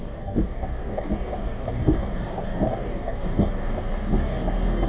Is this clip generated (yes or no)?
yes